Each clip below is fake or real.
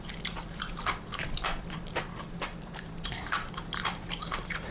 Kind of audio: fake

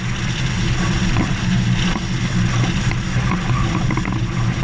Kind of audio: real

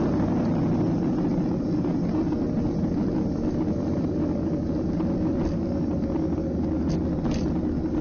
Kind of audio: real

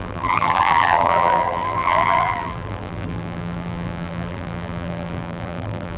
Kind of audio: fake